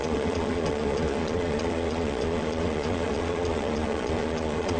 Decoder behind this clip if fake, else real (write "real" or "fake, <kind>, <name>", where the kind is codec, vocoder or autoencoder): fake, vocoder, Vocos